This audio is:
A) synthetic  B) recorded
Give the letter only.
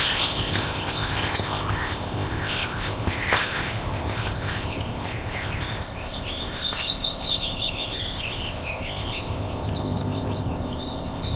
A